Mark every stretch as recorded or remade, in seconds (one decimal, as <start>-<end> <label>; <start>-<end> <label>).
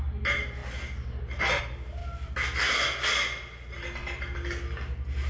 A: 0.0-5.3 recorded